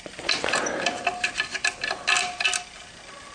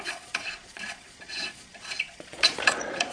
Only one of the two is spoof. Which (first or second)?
second